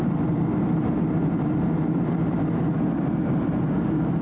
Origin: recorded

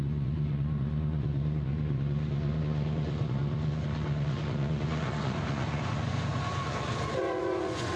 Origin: remade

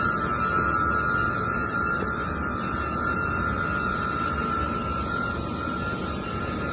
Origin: recorded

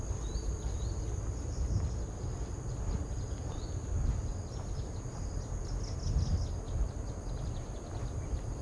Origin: recorded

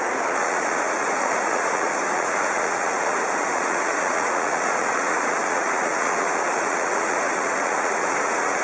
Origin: remade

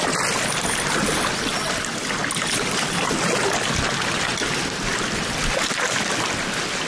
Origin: recorded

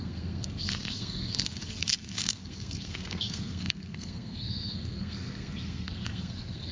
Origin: remade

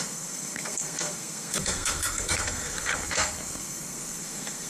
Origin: remade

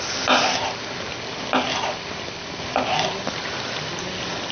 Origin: recorded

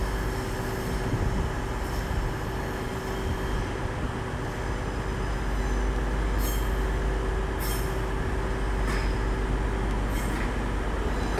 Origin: recorded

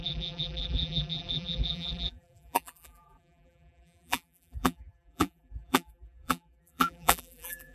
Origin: remade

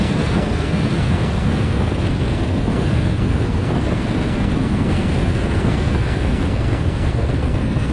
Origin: remade